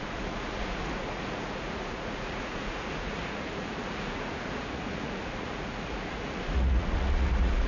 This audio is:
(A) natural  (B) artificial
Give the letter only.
B